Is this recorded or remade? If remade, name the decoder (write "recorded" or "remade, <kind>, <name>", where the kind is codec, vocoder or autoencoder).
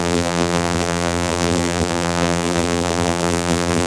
remade, vocoder, BigVGAN v2